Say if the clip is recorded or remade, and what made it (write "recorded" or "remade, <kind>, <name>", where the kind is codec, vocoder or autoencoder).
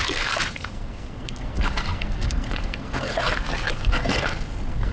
remade, codec, SNAC